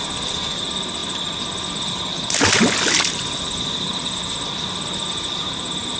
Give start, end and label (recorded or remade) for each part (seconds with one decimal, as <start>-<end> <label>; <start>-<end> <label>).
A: 0.0-6.0 recorded